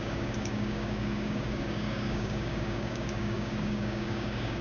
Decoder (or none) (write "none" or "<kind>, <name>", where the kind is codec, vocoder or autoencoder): codec, DAC